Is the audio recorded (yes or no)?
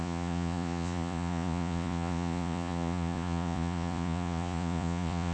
no